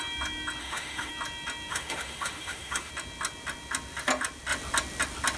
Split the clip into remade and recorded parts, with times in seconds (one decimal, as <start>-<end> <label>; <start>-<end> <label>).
0.0-0.6 recorded; 0.6-1.1 remade; 1.1-1.7 recorded; 1.7-2.9 remade; 2.9-5.4 recorded